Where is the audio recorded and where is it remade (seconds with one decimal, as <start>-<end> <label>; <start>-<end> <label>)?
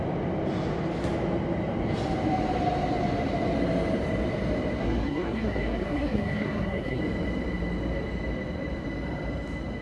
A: 0.0-4.8 recorded; 4.8-7.0 remade; 7.0-9.8 recorded